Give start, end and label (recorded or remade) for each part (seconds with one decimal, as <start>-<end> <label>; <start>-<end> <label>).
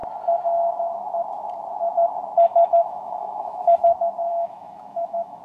0.0-2.5 recorded; 2.5-3.7 remade; 3.7-4.3 recorded; 4.3-5.4 remade